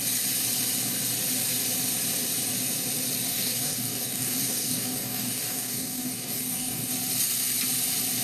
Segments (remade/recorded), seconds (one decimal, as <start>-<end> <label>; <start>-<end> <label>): 0.0-3.3 recorded; 3.3-6.9 remade; 6.9-8.2 recorded